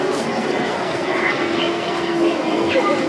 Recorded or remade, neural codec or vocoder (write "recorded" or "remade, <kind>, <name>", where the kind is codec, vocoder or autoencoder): remade, codec, SNAC